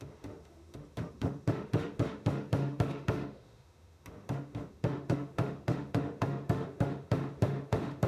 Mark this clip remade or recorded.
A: remade